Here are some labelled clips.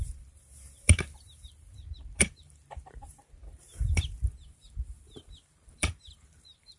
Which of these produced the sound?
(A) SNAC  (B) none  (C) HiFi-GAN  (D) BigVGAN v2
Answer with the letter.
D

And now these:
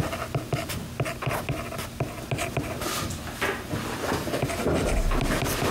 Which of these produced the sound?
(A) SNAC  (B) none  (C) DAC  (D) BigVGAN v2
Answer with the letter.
B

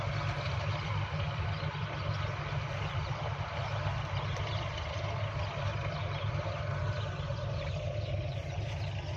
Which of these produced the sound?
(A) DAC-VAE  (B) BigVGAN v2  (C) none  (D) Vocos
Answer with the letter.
C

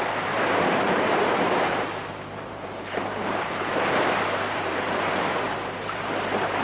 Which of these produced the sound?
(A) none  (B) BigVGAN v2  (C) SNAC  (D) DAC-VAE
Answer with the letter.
B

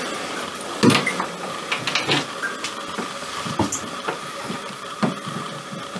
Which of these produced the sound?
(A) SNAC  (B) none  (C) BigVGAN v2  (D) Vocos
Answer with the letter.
B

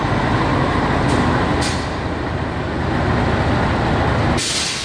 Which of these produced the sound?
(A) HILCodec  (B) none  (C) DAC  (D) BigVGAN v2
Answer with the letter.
B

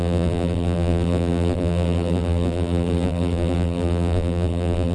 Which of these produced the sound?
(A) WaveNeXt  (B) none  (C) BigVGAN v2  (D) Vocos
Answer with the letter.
C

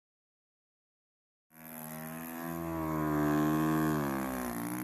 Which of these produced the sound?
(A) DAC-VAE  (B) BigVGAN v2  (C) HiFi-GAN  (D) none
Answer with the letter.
D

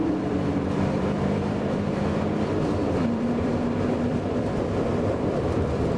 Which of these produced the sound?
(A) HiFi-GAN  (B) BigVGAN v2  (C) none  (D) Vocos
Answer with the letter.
B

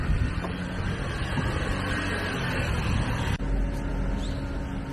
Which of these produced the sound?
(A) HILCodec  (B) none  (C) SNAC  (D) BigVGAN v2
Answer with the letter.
B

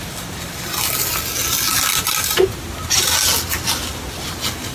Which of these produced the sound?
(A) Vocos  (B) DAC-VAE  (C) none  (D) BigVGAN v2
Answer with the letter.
C